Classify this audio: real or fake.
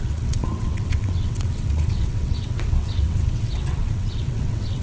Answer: fake